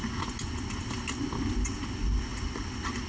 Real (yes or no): yes